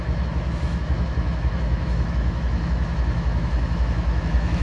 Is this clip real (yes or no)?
no